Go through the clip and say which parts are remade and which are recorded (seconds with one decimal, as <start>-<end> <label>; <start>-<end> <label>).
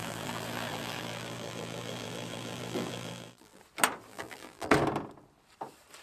0.0-3.6 remade; 3.6-4.1 recorded; 4.1-4.7 remade; 4.7-6.0 recorded